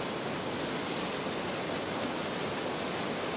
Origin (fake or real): real